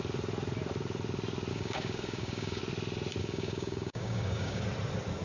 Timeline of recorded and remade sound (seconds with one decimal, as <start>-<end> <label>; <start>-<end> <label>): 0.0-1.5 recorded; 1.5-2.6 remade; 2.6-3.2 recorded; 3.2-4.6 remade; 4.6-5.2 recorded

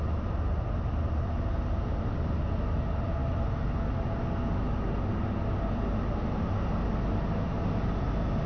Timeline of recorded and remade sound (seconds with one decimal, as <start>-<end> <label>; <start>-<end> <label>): 0.0-8.5 recorded

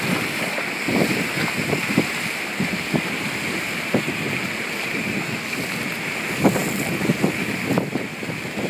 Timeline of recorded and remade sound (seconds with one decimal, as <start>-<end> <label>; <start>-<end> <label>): 0.0-8.7 recorded

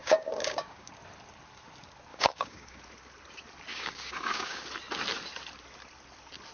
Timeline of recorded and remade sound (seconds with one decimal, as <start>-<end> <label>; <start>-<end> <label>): 0.0-0.9 remade; 0.9-2.1 recorded; 2.1-2.8 remade; 2.8-3.7 recorded; 3.7-4.6 remade; 4.6-6.5 recorded